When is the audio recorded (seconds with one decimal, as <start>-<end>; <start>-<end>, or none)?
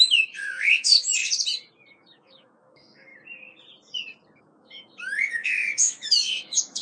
1.2-1.9; 3.1-4.4